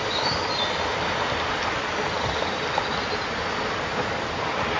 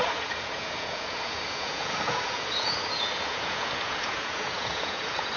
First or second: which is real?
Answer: first